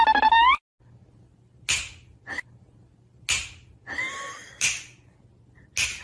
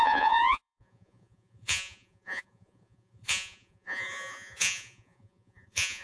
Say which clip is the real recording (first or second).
first